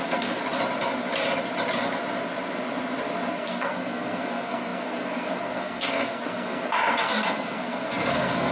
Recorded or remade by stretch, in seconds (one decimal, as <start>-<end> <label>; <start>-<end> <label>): 0.0-0.4 remade; 0.4-3.3 recorded; 3.3-8.5 remade